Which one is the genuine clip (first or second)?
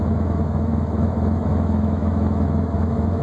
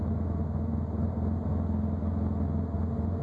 second